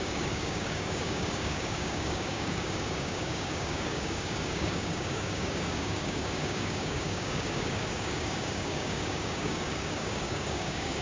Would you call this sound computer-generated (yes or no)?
yes